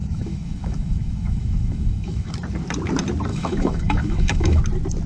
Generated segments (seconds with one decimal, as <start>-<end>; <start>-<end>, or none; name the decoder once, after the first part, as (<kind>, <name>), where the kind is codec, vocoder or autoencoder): 0.0-2.3 (autoencoder, DAC-VAE); 3.3-4.6